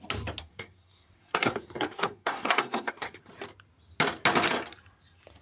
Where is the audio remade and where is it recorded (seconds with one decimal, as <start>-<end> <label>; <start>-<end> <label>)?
0.0-0.4 recorded; 0.4-3.2 remade; 3.2-5.4 recorded